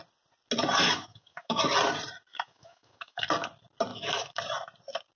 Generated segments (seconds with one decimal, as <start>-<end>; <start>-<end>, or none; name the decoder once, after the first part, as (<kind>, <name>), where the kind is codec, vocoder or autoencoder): 0.8-1.6 (autoencoder, DAC-VAE); 2.3-3.3; 3.9-4.4

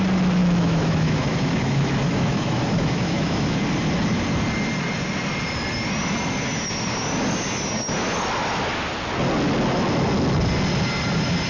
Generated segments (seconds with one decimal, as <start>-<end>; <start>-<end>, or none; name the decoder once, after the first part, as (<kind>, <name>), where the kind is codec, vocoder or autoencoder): 0.4-3.6 (autoencoder, DAC-VAE)

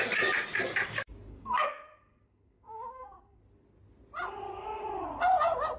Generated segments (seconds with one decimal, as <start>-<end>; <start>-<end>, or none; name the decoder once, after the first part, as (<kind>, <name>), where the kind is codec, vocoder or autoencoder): 1.3-3.4 (codec, SNAC)

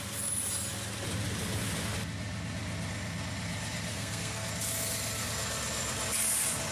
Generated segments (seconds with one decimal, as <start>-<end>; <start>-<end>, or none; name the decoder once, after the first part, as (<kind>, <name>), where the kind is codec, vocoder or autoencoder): 3.9-4.5 (codec, SNAC)

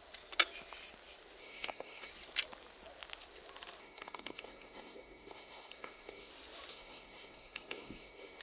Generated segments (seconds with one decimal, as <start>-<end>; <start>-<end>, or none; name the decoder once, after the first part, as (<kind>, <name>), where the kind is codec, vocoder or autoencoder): 1.4-2.1 (codec, SNAC); 3.8-6.3; 6.7-8.4

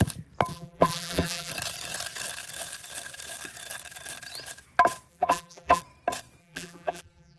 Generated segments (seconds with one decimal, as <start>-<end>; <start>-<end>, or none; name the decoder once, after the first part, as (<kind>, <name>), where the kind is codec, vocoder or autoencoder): 0.5-1.5 (vocoder, BigVGAN v2); 5.1-5.8; 6.4-7.4